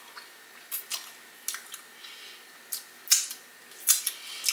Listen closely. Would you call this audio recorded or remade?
recorded